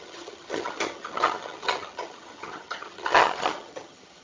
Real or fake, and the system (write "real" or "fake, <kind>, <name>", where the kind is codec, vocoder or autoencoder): fake, vocoder, HiFi-GAN